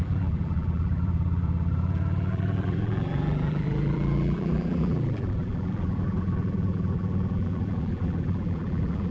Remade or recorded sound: remade